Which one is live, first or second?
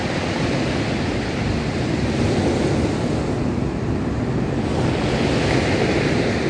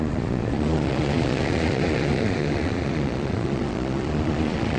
first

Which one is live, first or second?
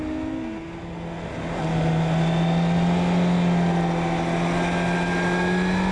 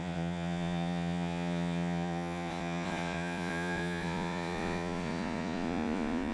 first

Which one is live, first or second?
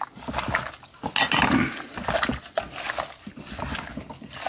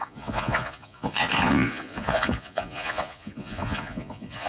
first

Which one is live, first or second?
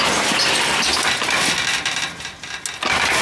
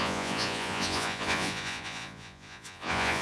first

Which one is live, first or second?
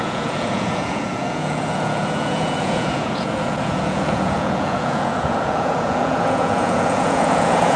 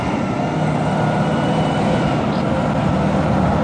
second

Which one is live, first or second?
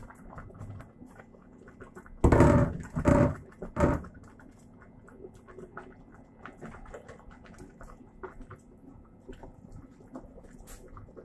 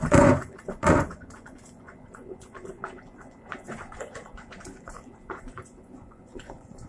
first